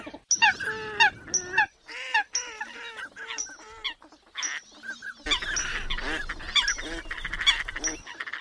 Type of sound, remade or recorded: recorded